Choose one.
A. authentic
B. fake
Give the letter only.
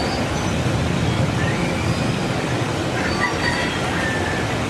A